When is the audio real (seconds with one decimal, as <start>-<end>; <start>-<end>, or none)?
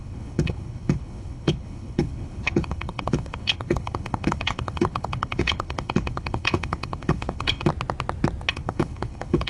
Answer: 7.7-8.5